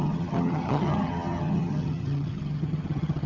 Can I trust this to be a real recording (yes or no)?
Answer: no